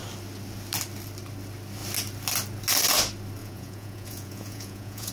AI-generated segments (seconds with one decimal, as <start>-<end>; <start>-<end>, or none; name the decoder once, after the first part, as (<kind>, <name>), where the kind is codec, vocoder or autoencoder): 3.4-5.1 (vocoder, Vocos)